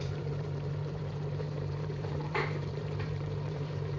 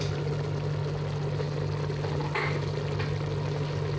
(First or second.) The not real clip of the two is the first